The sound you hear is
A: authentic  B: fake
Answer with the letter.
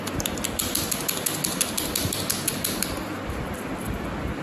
A